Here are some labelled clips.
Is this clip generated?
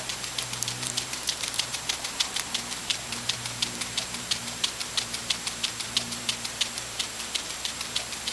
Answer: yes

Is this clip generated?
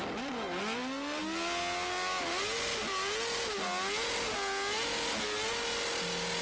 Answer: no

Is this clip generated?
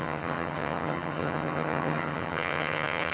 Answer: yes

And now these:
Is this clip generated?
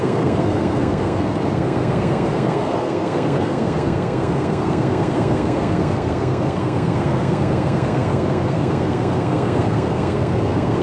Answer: yes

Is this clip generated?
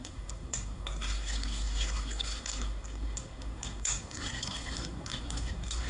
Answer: yes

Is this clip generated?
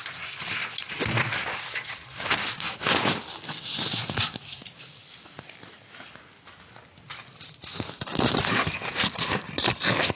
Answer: no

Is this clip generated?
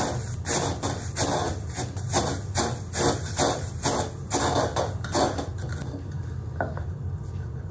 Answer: no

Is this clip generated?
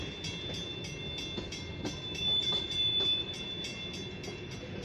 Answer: no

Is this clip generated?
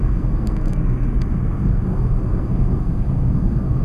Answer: yes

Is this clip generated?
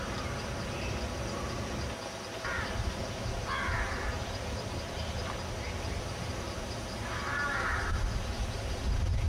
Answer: no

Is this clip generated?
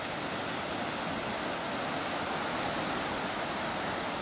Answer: no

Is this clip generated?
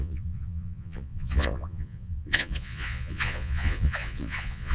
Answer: yes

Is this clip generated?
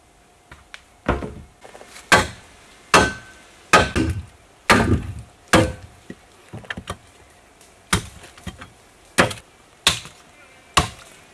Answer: no